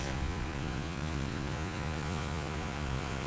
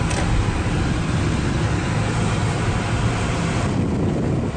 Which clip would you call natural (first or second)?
second